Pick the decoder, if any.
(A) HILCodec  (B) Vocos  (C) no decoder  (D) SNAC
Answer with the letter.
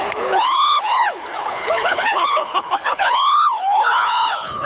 A